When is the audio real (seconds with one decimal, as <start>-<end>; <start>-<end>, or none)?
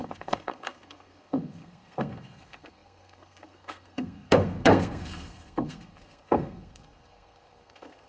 none